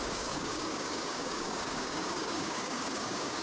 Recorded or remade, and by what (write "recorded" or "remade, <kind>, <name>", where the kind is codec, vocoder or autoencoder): remade, codec, DAC